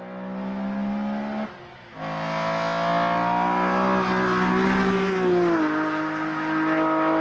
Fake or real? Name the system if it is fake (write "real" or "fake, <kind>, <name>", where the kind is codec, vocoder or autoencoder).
real